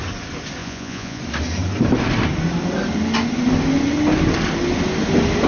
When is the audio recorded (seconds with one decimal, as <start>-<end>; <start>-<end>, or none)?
0.0-0.6; 1.2-5.5